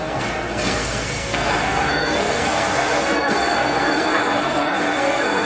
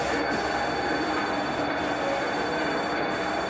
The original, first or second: second